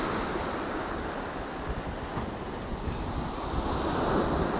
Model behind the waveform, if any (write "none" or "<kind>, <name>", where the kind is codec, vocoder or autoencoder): none